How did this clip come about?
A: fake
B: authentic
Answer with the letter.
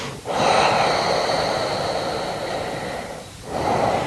B